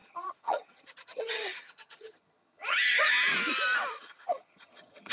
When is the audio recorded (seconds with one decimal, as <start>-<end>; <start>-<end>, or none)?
3.1-3.9